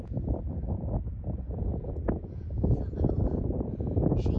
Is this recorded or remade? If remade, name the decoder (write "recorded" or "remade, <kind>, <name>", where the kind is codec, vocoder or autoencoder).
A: remade, vocoder, Vocos